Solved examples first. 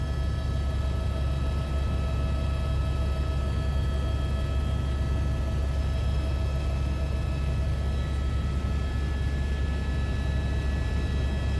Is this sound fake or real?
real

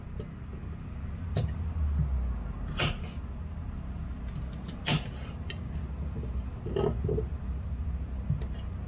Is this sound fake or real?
real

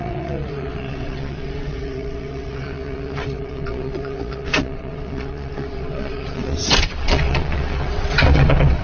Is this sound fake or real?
fake